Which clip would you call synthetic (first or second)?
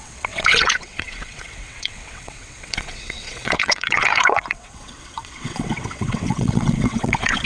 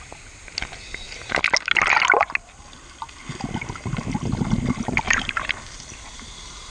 first